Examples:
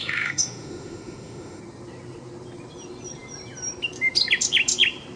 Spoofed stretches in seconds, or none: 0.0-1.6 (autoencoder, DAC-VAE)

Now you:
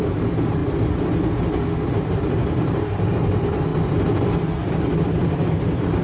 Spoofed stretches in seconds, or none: 0.0-0.6 (vocoder, BigVGAN v2); 1.9-3.7; 4.7-6.0

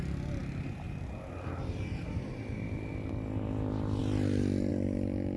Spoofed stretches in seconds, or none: none

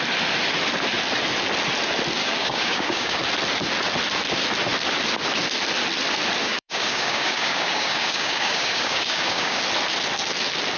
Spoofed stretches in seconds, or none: 2.2-3.2 (codec, DAC); 6.4-9.6

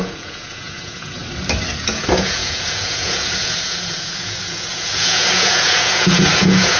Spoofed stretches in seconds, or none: 0.0-1.2 (vocoder, Vocos); 1.8-6.8

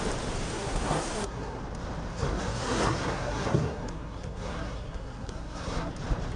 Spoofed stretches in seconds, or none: 0.5-1.6 (codec, SNAC); 2.1-5.9

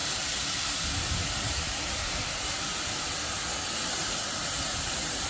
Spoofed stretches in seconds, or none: 0.0-3.0 (vocoder, BigVGAN v2); 4.4-5.3

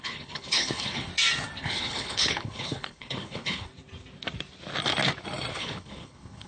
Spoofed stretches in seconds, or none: 0.0-1.1 (codec, HILCodec); 1.6-3.7; 5.5-6.5